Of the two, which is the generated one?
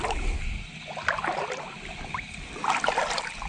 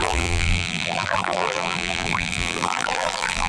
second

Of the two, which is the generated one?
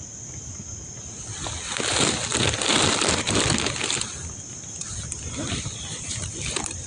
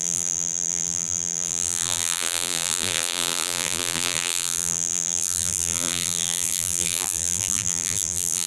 second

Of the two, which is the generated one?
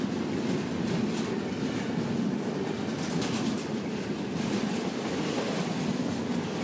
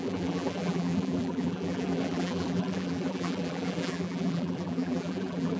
second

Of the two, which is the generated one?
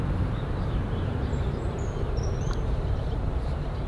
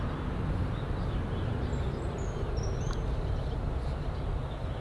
first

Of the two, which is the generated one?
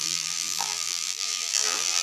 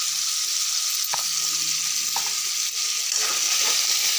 first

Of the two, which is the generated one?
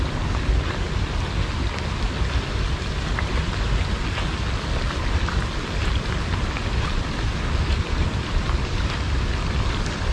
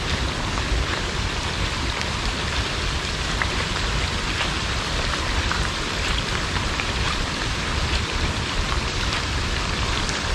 second